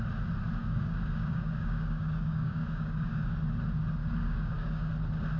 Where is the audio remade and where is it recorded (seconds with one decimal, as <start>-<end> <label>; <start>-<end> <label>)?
0.0-0.6 recorded; 0.6-3.4 remade; 3.4-4.0 recorded; 4.0-4.9 remade; 4.9-5.4 recorded